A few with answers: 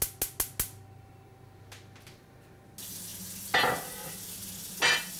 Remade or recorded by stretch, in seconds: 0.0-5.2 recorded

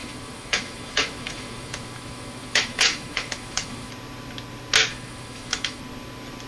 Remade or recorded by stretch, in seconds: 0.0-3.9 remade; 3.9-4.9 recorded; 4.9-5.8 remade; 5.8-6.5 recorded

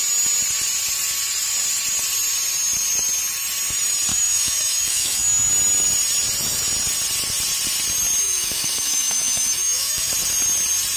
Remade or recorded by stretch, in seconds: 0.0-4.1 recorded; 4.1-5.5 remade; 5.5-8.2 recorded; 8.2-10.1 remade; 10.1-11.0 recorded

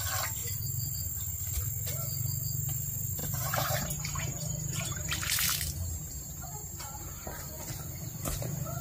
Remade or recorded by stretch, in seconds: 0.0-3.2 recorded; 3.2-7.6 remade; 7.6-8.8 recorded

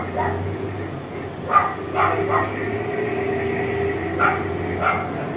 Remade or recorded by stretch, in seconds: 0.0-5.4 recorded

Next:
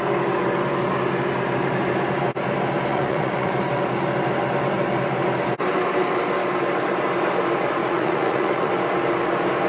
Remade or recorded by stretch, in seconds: 0.0-2.9 recorded; 2.9-3.5 remade; 3.5-7.8 recorded; 7.8-8.7 remade; 8.7-9.7 recorded